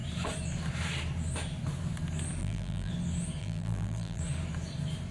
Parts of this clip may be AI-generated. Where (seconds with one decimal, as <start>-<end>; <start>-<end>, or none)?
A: 2.4-2.9; 3.4-4.2